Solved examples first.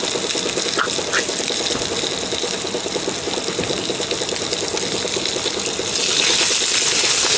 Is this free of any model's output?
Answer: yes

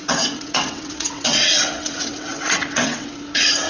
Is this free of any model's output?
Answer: no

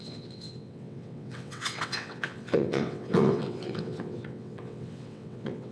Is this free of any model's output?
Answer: no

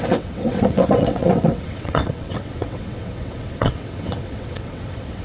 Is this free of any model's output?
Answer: no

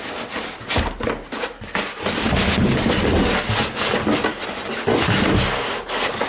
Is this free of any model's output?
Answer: yes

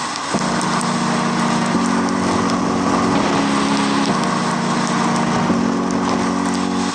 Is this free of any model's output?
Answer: yes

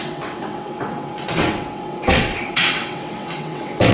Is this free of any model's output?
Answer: no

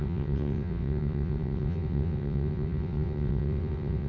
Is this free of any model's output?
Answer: no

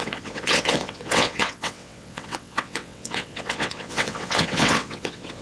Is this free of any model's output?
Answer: no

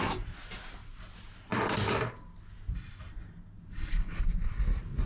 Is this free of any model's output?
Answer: yes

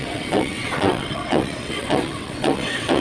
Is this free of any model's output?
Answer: no